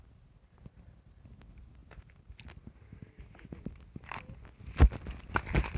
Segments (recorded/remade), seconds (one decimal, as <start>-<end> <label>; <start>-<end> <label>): 0.0-5.8 recorded

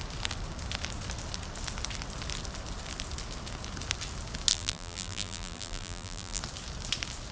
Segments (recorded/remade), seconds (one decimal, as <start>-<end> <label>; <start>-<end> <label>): 0.0-4.5 recorded; 4.5-6.4 remade; 6.4-7.3 recorded